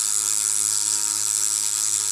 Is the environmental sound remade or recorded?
remade